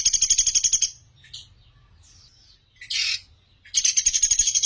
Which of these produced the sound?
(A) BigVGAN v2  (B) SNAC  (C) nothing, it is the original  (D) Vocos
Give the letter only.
C